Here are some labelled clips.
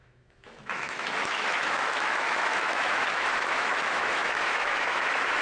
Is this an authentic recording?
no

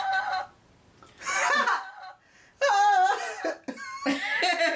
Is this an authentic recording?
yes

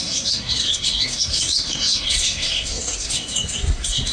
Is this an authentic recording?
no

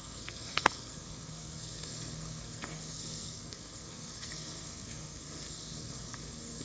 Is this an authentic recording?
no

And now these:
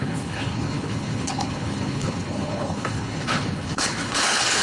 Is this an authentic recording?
no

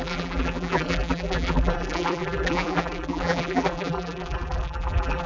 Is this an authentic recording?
no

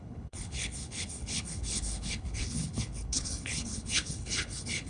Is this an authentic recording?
no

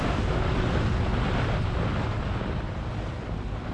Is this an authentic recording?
yes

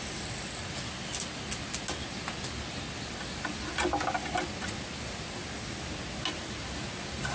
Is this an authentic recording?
yes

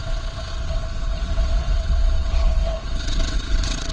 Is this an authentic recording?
no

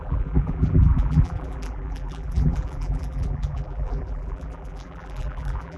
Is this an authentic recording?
no